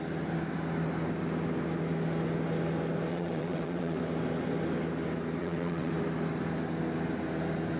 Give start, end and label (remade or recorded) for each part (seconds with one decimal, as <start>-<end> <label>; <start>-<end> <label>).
0.0-3.1 recorded; 3.1-4.0 remade; 4.0-5.4 recorded; 5.4-5.9 remade; 5.9-7.8 recorded